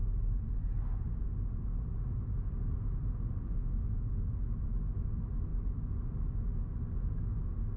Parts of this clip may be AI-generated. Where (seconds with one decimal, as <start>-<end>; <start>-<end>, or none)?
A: none